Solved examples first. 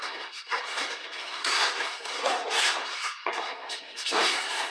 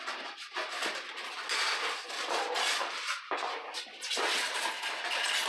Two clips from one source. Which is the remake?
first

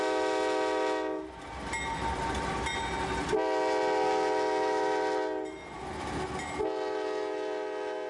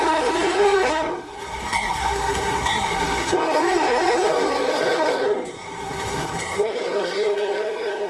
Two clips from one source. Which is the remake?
second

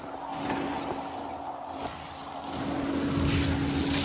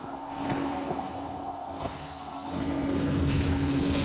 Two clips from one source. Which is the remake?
second